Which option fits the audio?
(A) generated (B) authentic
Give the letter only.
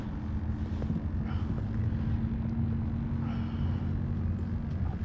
B